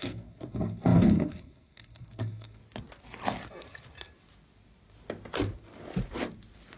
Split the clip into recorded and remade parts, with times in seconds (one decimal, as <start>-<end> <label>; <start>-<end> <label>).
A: 0.0-2.6 remade; 2.6-6.8 recorded